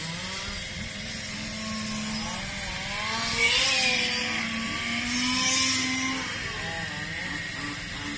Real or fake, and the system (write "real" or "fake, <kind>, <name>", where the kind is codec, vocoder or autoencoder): real